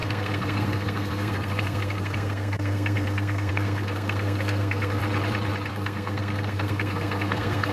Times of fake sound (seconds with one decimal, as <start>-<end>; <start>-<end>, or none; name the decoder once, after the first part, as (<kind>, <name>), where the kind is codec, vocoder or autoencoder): 0.0-5.0 (codec, SNAC); 5.7-7.7